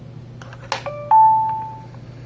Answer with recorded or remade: recorded